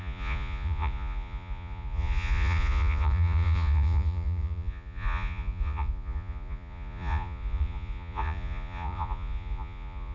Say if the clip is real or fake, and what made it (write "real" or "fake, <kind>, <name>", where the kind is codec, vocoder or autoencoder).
fake, vocoder, Vocos